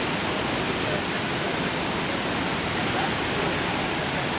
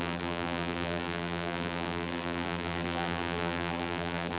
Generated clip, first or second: second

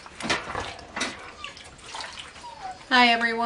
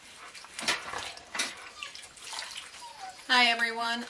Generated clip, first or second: second